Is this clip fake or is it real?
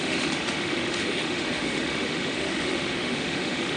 fake